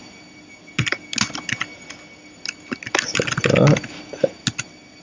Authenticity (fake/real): real